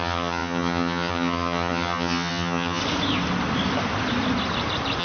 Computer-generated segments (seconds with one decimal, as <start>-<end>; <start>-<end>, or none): 0.0-2.8